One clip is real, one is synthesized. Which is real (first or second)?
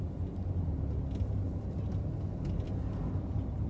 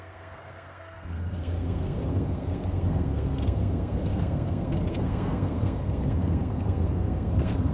first